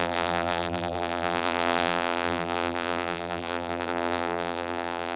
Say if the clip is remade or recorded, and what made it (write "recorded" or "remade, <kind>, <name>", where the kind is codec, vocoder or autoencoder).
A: remade, vocoder, BigVGAN v2